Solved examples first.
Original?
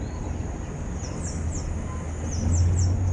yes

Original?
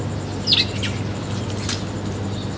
yes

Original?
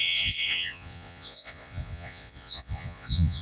no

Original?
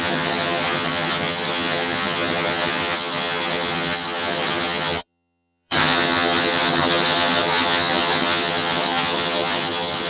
no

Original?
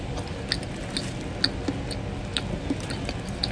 yes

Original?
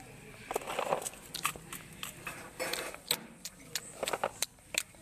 yes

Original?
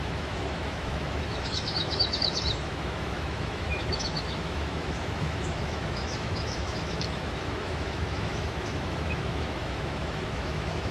no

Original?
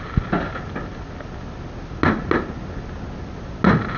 yes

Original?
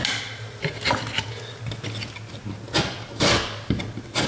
yes